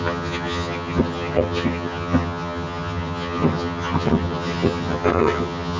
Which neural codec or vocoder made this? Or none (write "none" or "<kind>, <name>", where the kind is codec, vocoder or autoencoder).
vocoder, HiFi-GAN